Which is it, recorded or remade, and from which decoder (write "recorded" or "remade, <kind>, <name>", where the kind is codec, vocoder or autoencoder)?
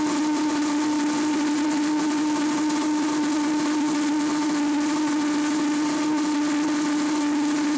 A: recorded